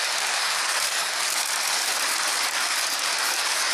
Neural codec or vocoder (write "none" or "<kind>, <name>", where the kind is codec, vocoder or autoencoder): codec, DAC